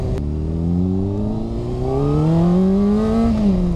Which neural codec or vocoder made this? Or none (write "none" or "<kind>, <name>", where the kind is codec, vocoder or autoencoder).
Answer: none